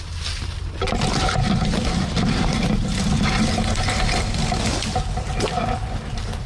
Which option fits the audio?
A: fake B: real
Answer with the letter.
B